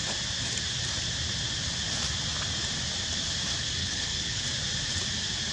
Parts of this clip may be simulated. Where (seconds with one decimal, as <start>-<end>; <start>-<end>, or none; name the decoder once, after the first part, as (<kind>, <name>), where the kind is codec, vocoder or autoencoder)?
3.8-4.4 (codec, HILCodec)